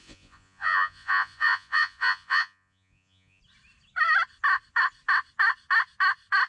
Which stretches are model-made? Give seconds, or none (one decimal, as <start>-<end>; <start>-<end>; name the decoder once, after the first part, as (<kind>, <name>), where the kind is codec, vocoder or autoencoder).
0.0-3.4 (vocoder, Vocos)